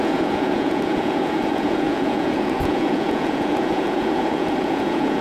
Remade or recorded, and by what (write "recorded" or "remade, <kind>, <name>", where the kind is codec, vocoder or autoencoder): remade, vocoder, Vocos